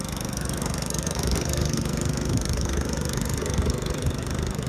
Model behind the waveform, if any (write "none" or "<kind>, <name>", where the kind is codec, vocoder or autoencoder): codec, SNAC